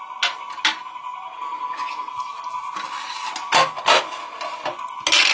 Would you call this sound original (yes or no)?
yes